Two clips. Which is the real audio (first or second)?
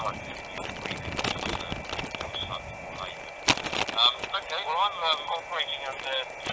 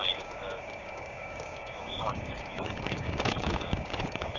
first